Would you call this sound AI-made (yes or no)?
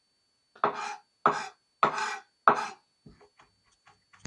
no